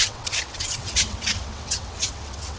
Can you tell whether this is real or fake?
fake